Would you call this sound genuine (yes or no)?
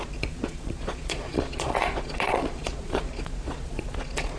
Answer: no